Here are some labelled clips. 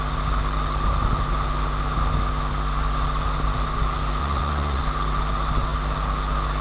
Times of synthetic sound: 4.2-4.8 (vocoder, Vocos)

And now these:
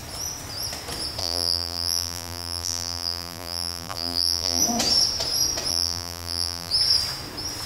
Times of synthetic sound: 1.2-4.6 (vocoder, BigVGAN v2); 5.7-6.7

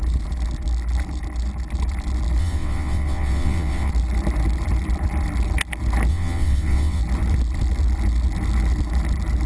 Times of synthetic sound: 2.4-3.9 (vocoder, WaveNeXt); 6.1-7.0

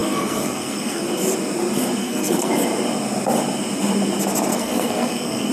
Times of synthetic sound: 0.0-1.0 (codec, SNAC); 2.0-2.5; 4.5-5.5

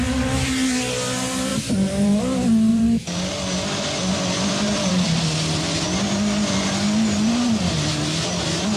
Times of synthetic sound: 1.5-2.2 (vocoder, BigVGAN v2); 2.7-3.3; 4.0-4.9

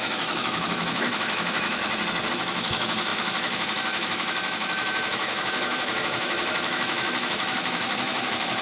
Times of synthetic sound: 0.0-1.8 (autoencoder, DAC-VAE); 2.3-8.6